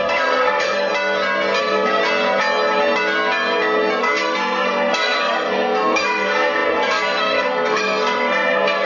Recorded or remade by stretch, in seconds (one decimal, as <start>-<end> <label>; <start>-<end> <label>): 0.0-0.9 remade; 0.9-1.6 recorded; 1.6-2.0 remade; 2.0-4.0 recorded; 4.0-8.9 remade